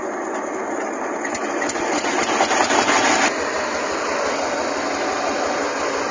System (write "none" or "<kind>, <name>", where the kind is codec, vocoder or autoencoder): none